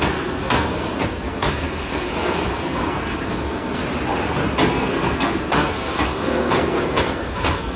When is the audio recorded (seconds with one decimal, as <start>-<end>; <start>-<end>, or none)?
3.8-4.7